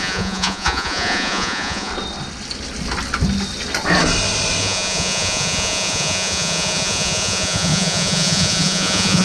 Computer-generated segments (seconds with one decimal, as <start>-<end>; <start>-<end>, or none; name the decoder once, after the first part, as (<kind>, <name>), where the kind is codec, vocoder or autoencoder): 0.0-1.9 (vocoder, Vocos); 4.6-9.2

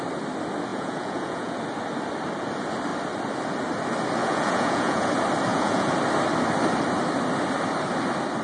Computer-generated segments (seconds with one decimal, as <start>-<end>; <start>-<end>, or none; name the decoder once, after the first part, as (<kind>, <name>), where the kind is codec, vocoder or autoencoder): 0.7-1.5 (vocoder, Vocos); 4.2-5.1; 5.5-6.0

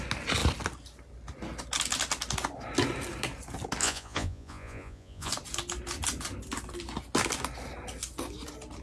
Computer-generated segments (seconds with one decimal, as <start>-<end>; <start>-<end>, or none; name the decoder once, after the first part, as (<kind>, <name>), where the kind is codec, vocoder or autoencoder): 3.8-5.3 (vocoder, Vocos)

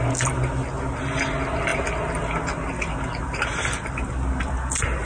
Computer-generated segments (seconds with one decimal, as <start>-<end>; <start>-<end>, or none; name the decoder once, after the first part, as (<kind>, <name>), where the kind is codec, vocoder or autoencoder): none